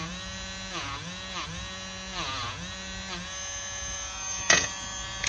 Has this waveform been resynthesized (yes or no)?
yes